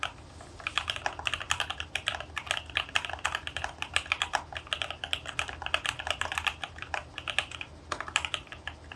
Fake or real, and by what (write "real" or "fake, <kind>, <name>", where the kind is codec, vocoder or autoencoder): real